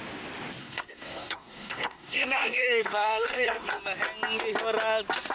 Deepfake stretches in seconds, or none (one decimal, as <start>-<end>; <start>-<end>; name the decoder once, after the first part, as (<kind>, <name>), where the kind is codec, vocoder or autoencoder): 0.6-3.8 (codec, SNAC)